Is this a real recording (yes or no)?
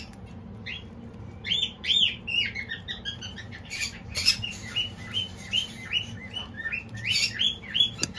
no